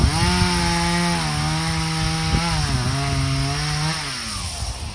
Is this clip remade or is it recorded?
recorded